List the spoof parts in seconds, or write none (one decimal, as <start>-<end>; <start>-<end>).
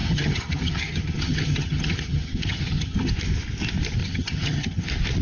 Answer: 0.0-3.1; 4.0-4.8